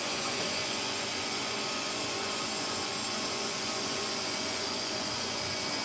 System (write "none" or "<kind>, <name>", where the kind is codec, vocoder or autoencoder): vocoder, Vocos